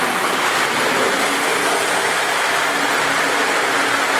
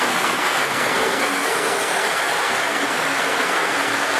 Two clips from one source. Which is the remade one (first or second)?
second